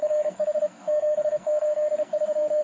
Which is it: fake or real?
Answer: fake